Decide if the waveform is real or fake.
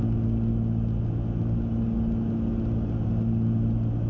real